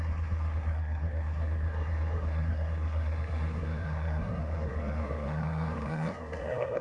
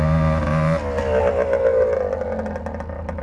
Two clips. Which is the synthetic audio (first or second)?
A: first